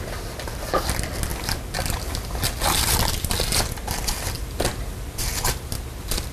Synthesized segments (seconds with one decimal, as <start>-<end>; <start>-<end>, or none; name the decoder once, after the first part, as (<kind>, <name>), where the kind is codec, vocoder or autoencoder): none